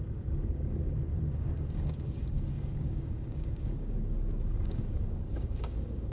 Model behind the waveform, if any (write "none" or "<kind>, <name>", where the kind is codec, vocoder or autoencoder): codec, DAC